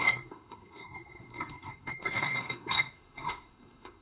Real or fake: fake